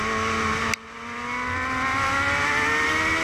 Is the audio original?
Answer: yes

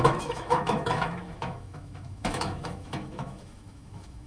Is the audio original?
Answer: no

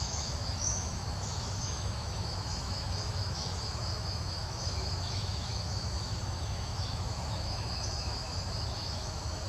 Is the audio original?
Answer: no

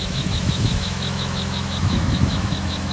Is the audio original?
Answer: no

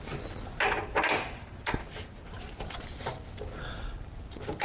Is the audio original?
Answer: yes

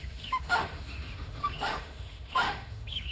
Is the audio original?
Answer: no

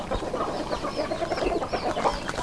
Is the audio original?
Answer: yes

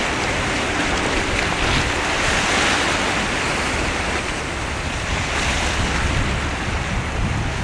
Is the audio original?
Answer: yes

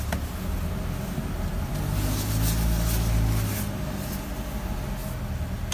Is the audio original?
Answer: yes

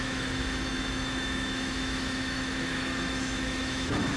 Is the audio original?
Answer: no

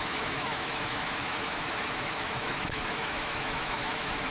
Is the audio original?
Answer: no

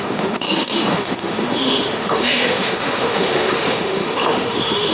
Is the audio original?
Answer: no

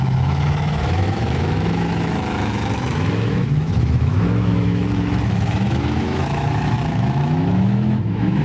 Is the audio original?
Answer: no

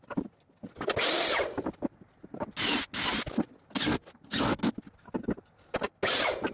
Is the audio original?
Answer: yes